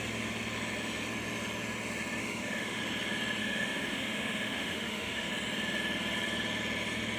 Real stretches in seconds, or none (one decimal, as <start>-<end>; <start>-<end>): 0.0-2.2; 2.8-3.4; 5.3-7.2